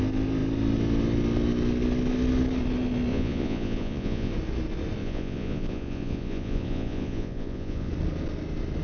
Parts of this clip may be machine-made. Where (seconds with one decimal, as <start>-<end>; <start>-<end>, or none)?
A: 3.1-4.3; 5.0-7.9